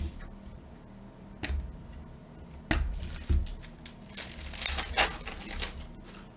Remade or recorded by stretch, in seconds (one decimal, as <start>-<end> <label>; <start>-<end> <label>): 0.0-6.4 recorded